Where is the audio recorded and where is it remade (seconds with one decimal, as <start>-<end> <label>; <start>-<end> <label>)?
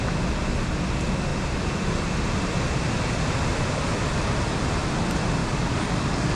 0.0-5.4 recorded; 5.4-6.4 remade